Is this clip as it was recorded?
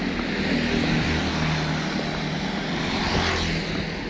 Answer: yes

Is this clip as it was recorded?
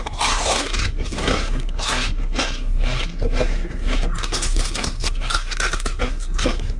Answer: no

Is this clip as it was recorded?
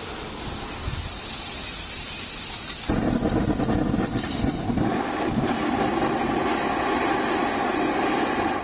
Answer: yes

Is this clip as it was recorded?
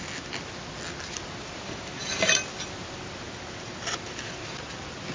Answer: yes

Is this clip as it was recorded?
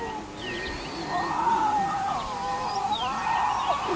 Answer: yes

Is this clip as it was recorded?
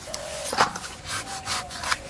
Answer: no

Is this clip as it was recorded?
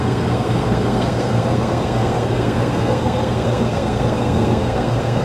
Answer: no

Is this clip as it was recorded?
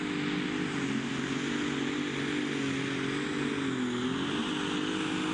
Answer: yes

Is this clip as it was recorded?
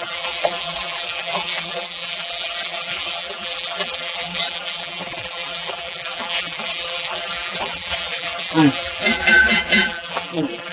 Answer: no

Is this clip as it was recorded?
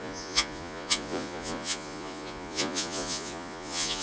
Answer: no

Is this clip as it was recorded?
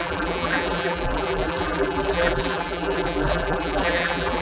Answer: no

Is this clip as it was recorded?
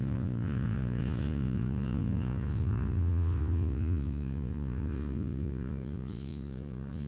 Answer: no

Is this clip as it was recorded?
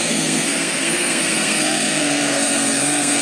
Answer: no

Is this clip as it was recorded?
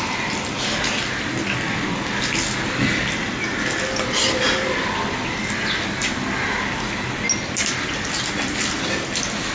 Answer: yes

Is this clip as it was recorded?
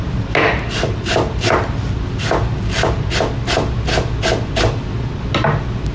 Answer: yes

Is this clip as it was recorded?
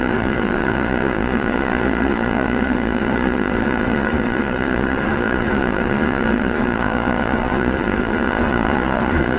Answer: no